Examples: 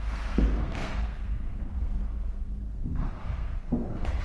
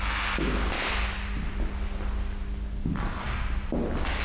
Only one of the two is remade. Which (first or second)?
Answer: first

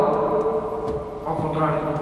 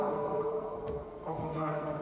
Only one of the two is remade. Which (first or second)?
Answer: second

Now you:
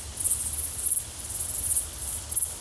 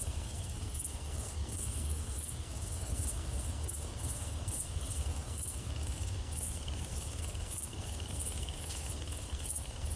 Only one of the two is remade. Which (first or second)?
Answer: second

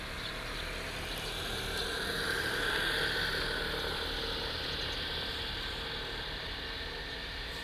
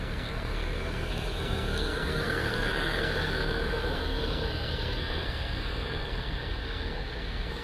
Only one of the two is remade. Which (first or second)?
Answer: second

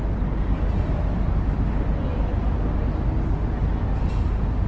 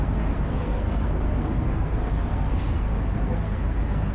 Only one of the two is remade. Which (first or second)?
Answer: second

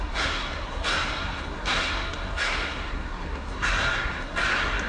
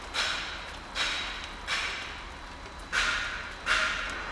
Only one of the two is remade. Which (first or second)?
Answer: first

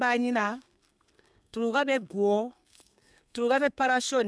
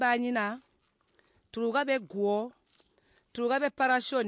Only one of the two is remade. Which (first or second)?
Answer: first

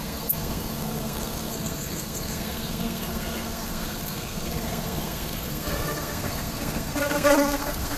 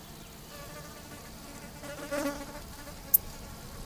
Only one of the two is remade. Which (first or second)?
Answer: first